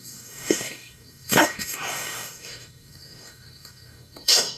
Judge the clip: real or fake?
fake